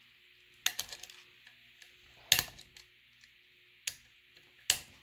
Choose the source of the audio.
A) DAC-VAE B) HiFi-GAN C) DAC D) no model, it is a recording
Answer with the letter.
D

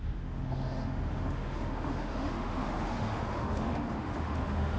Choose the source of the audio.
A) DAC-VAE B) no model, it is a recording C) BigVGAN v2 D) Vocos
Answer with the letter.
A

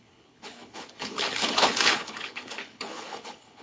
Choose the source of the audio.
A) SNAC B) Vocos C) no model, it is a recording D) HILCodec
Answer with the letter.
D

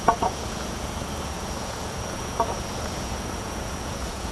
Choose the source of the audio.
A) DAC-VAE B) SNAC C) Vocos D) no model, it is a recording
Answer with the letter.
C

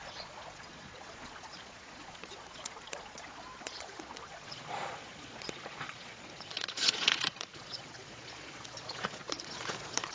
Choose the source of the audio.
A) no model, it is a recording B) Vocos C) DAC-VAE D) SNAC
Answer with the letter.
B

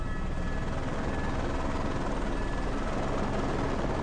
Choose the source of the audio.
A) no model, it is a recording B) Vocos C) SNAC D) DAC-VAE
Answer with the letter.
A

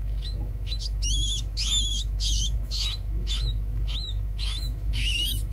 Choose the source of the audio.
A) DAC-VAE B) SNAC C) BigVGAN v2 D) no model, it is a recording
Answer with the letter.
A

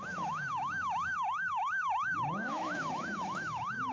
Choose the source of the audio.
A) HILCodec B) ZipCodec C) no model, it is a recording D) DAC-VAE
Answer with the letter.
D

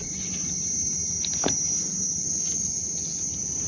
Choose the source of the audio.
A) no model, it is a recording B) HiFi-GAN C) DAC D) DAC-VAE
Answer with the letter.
A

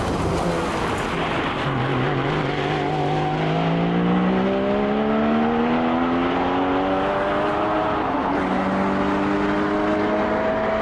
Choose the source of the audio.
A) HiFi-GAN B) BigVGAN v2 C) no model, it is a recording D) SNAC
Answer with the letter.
C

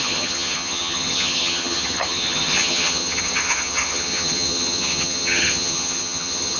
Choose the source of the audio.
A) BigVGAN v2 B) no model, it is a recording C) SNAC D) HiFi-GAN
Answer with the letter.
D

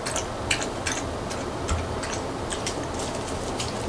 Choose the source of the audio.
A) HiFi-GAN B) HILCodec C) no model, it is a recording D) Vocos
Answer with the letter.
C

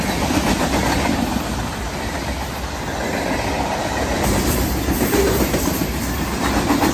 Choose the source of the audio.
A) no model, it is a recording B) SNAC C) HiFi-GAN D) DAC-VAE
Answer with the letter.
A